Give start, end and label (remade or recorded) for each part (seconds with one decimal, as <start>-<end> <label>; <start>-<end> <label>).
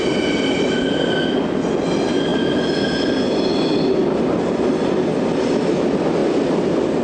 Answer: 0.0-4.0 recorded; 4.0-4.7 remade; 4.7-7.0 recorded